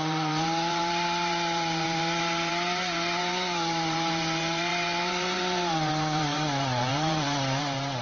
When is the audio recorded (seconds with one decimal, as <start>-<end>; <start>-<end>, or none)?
none